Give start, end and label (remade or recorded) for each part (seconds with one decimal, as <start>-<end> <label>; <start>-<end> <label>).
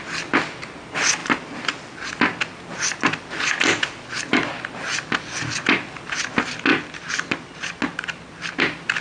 0.0-1.2 recorded; 1.2-2.1 remade; 2.1-9.0 recorded